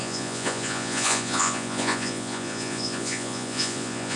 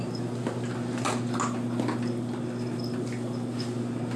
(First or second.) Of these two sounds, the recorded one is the second